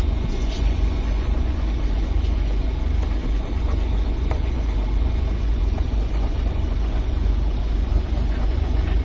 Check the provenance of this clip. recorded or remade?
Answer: remade